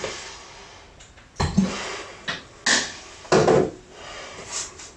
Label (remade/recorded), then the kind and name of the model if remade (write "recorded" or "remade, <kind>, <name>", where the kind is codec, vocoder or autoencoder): recorded